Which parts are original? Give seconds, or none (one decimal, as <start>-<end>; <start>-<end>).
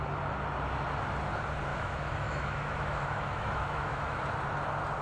0.0-1.7; 4.2-5.0